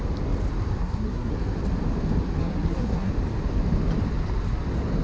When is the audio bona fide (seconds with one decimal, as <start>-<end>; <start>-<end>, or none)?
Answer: 0.0-0.8; 1.3-2.4; 3.1-5.0